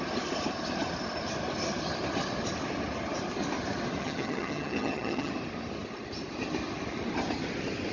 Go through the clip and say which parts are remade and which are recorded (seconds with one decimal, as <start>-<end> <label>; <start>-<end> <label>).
0.0-4.0 recorded; 4.0-5.3 remade; 5.3-7.9 recorded